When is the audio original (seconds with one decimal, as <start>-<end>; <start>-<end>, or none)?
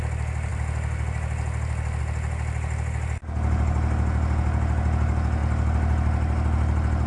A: 0.0-7.1